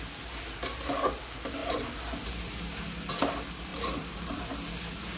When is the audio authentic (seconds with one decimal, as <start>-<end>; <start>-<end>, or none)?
0.0-3.7; 4.2-5.2